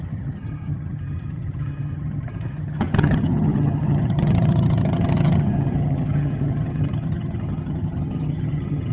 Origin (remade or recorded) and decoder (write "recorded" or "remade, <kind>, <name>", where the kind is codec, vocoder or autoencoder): remade, vocoder, HiFi-GAN